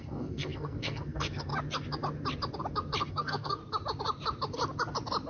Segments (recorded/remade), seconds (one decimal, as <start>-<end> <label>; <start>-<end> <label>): 0.0-1.5 remade; 1.5-3.1 recorded; 3.1-3.6 remade; 3.6-5.3 recorded